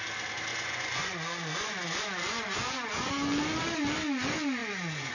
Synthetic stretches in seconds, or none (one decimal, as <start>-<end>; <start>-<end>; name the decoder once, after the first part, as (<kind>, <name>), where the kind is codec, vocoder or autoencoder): 0.5-3.1 (vocoder, Vocos); 4.6-5.1